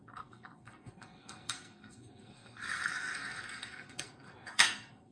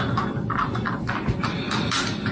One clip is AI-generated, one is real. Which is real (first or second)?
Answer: second